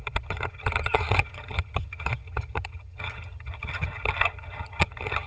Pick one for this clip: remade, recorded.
remade